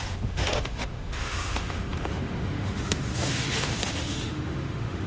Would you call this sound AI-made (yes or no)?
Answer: yes